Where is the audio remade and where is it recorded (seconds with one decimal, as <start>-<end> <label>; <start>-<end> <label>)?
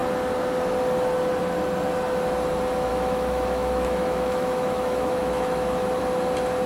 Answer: 0.0-2.9 recorded; 2.9-6.0 remade; 6.0-6.7 recorded